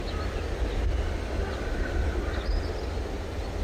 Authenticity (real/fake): real